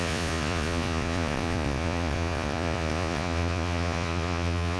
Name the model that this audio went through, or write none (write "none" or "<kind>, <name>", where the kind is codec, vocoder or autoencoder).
vocoder, Vocos